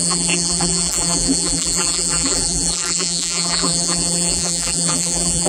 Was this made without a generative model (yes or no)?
no